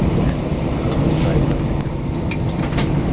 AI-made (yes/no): yes